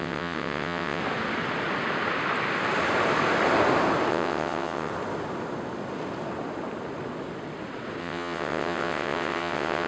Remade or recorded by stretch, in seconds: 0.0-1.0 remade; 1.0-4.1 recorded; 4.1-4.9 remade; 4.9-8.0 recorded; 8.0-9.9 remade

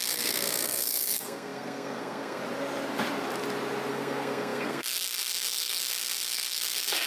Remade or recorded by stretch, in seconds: 0.0-2.4 remade; 2.4-3.9 recorded; 3.9-7.1 remade

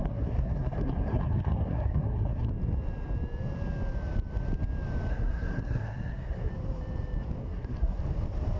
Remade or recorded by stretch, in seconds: 0.0-2.5 remade; 2.5-5.1 recorded; 5.1-6.5 remade; 6.5-7.4 recorded; 7.4-8.0 remade; 8.0-8.6 recorded

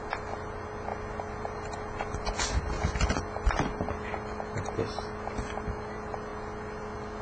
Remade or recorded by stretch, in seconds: 0.0-7.2 recorded

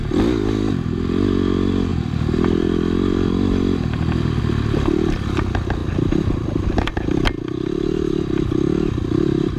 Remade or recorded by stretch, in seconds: 0.0-1.9 recorded; 1.9-4.4 remade; 4.4-5.8 recorded; 5.8-6.9 remade; 6.9-9.6 recorded

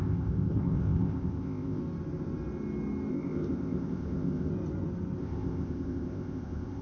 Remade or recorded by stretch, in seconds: 0.0-1.8 remade; 1.8-3.1 recorded; 3.1-4.5 remade; 4.5-5.2 recorded; 5.2-6.8 remade